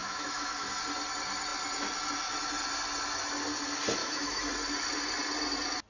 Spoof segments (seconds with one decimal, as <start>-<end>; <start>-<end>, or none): 0.0-0.8; 4.0-4.5